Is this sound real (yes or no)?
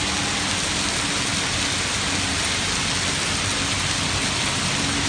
yes